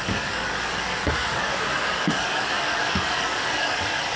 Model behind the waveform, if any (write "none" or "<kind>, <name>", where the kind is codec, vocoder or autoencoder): codec, DAC